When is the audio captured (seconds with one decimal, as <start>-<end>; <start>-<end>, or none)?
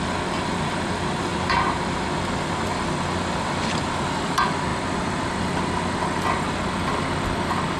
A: 0.0-1.3; 2.1-4.7; 5.4-7.8